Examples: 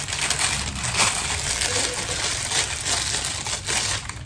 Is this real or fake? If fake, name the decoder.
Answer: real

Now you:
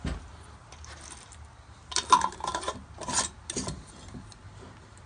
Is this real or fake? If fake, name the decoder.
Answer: real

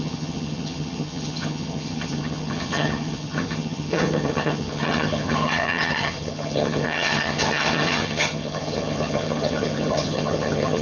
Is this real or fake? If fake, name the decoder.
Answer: fake, vocoder, HiFi-GAN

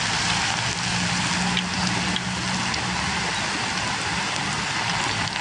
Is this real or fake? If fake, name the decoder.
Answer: real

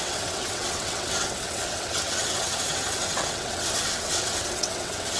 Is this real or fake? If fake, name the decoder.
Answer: fake, vocoder, WaveNeXt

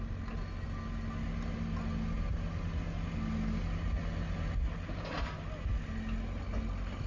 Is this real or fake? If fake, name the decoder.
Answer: real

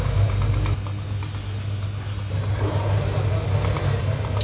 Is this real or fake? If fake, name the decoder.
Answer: real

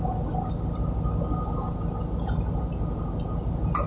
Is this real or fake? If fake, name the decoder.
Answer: real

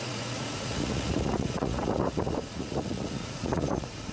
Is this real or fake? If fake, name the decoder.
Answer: fake, vocoder, Vocos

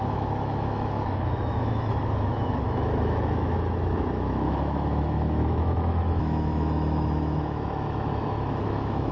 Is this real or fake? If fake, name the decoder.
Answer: fake, autoencoder, DAC-VAE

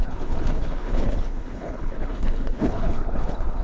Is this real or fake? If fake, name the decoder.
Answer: fake, codec, HILCodec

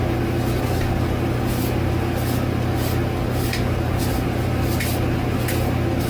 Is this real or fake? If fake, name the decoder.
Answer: real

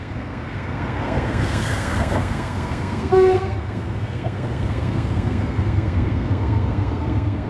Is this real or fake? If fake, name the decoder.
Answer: fake, codec, SNAC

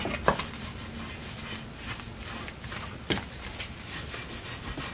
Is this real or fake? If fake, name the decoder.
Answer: real